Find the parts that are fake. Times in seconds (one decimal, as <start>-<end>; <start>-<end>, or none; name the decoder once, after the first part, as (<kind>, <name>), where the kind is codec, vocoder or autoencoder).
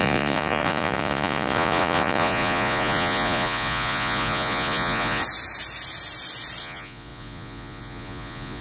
0.0-5.2 (vocoder, Vocos); 6.6-8.6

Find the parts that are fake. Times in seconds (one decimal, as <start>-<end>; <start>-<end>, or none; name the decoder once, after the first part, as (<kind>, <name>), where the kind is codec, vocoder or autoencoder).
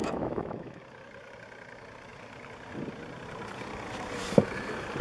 0.0-0.8 (autoencoder, DAC-VAE)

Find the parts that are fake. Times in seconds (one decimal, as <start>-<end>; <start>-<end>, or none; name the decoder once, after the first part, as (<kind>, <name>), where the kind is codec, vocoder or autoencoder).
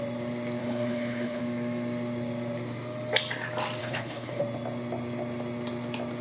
0.6-1.4 (codec, HILCodec); 3.8-4.4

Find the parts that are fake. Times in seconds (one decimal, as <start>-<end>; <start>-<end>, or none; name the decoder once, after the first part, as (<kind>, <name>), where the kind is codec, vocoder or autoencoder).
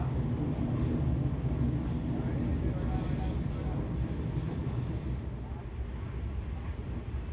none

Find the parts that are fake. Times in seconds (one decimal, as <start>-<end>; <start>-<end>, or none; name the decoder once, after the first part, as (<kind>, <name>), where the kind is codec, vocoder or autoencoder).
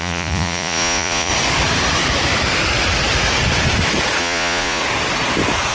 0.0-1.3 (vocoder, Vocos); 4.2-4.8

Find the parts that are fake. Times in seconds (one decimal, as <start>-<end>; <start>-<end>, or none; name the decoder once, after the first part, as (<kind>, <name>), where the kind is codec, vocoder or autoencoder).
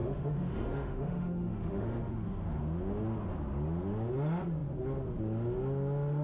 0.0-2.6 (autoencoder, DAC-VAE)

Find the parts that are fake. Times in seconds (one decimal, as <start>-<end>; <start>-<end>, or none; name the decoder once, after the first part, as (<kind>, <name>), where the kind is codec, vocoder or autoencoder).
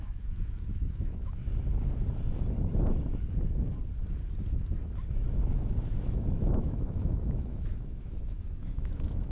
0.0-1.4 (autoencoder, DAC-VAE); 5.8-9.3